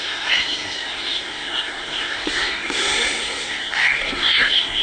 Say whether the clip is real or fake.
fake